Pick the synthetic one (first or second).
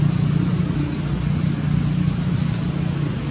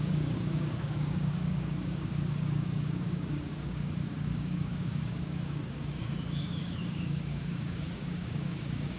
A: second